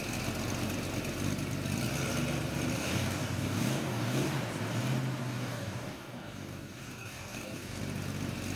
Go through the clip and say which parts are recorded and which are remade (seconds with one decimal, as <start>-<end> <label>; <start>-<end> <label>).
0.0-2.8 recorded; 2.8-4.3 remade; 4.3-5.2 recorded; 5.2-7.8 remade; 7.8-8.6 recorded

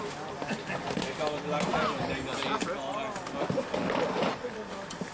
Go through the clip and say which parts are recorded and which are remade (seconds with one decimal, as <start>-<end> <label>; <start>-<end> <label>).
0.0-5.1 recorded

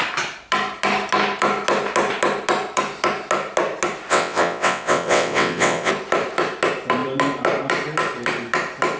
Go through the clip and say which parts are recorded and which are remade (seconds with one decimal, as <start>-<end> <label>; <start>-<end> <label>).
0.0-4.1 recorded; 4.1-5.9 remade; 5.9-9.0 recorded

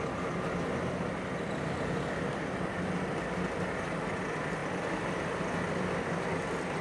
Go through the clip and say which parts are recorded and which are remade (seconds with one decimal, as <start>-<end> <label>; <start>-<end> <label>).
0.0-6.8 recorded

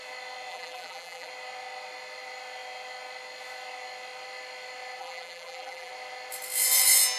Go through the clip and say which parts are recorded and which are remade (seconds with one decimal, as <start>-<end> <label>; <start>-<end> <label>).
0.0-0.5 recorded; 0.5-1.3 remade; 1.3-5.0 recorded; 5.0-5.9 remade; 5.9-7.2 recorded

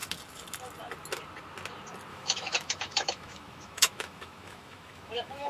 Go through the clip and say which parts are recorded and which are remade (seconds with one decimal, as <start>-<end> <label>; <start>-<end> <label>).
0.0-2.1 recorded; 2.1-5.5 remade